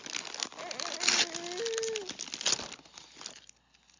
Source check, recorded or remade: recorded